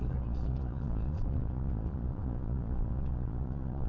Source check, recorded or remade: remade